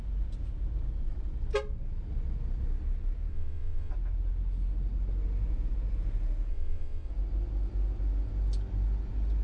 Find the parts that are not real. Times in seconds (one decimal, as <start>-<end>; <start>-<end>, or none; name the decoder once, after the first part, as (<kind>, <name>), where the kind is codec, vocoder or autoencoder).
3.3-3.9 (vocoder, WaveNeXt); 6.5-7.1

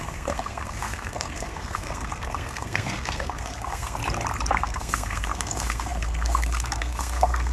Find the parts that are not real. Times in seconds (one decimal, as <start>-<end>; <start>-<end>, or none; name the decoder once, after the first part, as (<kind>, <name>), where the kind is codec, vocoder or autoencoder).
0.0-4.0 (codec, SNAC); 4.5-7.5

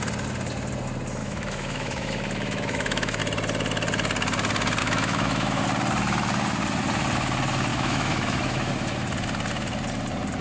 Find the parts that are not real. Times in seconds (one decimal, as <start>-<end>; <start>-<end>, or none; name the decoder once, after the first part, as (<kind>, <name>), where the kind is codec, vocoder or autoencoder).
1.2-3.2 (autoencoder, DAC-VAE); 4.8-5.6; 7.7-8.7

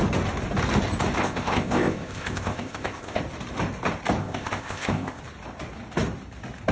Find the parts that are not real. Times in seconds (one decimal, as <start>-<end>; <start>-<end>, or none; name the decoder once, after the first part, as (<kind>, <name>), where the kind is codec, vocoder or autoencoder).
1.2-3.2 (codec, ZipCodec); 4.2-5.2

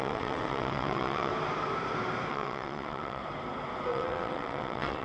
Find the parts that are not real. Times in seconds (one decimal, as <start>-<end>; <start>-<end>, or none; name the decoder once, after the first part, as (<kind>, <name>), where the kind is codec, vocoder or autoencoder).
0.0-1.3 (vocoder, WaveNeXt); 2.3-3.2; 3.9-5.0

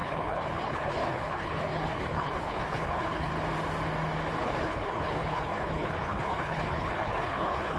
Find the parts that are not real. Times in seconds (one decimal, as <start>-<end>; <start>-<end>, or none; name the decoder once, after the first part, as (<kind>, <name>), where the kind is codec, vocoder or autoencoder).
0.0-3.3 (codec, HILCodec); 4.4-7.8